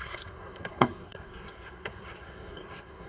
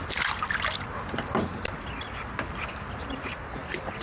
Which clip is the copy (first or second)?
first